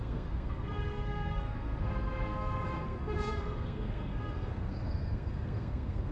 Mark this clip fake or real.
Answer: fake